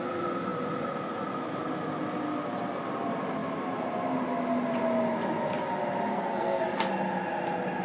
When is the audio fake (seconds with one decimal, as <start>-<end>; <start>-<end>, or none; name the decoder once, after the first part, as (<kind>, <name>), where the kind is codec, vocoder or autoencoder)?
6.1-6.6 (codec, SNAC)